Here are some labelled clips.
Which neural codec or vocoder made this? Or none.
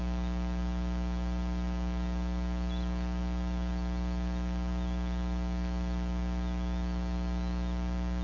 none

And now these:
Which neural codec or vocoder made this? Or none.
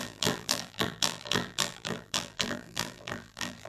vocoder, BigVGAN v2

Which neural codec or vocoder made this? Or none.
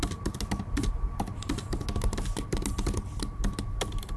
none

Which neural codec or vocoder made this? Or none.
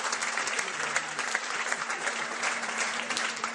vocoder, BigVGAN v2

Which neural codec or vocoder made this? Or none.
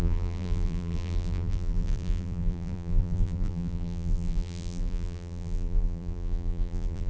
vocoder, BigVGAN v2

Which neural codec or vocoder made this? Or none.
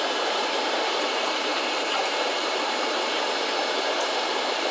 vocoder, BigVGAN v2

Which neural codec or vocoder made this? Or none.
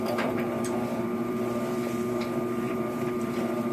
vocoder, BigVGAN v2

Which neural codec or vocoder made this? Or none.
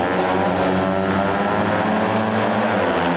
none